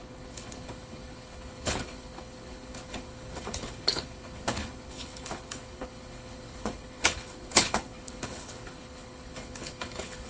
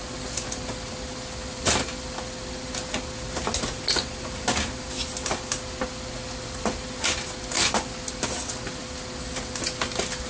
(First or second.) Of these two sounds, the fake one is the first